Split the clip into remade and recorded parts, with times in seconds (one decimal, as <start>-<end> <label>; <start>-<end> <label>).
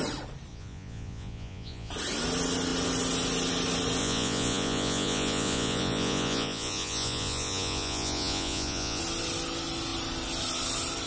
0.0-0.5 recorded; 0.5-1.9 remade; 1.9-4.0 recorded; 4.0-9.0 remade; 9.0-11.1 recorded